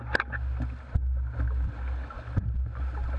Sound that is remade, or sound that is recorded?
recorded